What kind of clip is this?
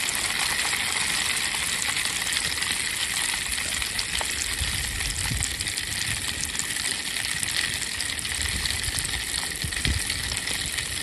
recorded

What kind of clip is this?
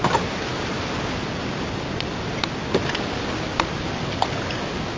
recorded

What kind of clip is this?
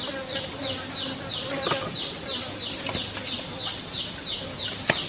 recorded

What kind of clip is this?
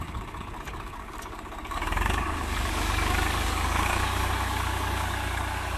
remade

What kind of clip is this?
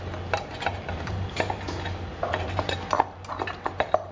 recorded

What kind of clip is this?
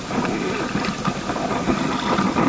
recorded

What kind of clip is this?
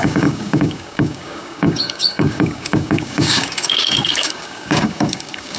remade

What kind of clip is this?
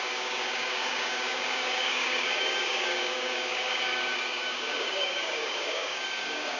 remade